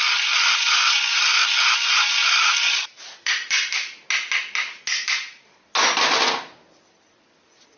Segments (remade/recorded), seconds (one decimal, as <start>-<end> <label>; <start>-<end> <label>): 0.0-7.8 recorded